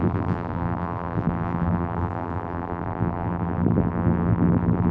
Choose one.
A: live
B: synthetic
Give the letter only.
B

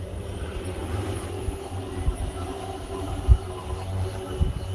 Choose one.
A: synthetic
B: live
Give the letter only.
A